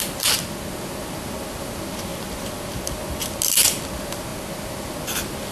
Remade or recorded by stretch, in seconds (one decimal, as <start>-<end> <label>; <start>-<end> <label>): 0.0-5.5 recorded